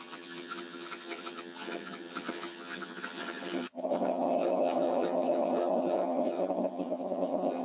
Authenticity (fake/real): fake